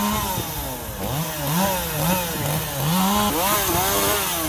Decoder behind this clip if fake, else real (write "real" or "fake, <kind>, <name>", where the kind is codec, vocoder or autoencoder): real